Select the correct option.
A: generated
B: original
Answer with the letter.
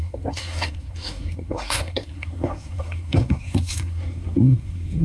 A